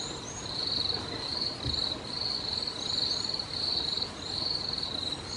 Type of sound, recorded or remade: recorded